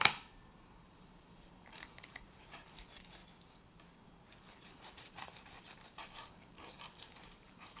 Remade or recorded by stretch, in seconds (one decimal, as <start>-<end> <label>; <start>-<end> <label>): 0.0-3.2 remade; 3.2-4.4 recorded; 4.4-7.8 remade